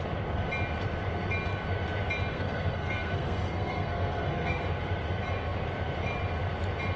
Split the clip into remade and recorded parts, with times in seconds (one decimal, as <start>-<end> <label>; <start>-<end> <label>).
0.0-2.3 recorded; 2.3-4.6 remade; 4.6-7.0 recorded